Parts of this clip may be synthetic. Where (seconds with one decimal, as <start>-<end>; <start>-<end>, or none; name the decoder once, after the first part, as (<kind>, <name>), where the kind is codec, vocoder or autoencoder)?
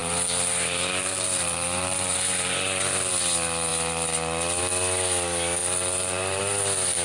0.0-3.1 (vocoder, BigVGAN v2); 5.6-6.4